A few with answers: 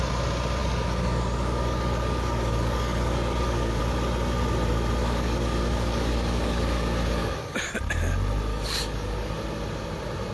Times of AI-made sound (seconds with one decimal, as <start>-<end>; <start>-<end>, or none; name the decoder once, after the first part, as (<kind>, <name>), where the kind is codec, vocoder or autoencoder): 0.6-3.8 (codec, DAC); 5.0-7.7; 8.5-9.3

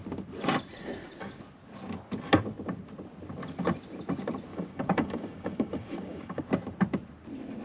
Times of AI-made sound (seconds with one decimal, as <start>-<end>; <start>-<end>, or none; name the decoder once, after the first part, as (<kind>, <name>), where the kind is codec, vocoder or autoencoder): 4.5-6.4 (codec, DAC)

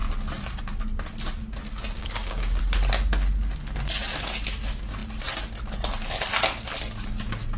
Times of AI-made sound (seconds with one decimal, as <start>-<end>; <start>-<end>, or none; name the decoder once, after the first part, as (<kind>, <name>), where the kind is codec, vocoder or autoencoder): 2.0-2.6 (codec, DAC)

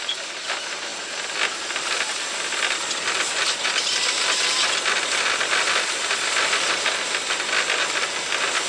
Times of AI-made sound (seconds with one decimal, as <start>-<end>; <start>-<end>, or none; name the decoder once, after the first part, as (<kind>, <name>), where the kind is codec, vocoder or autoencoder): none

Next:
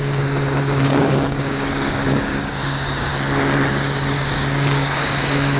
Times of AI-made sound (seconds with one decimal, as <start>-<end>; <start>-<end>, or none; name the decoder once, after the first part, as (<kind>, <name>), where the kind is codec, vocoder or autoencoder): 0.0-3.1 (codec, DAC); 3.7-5.6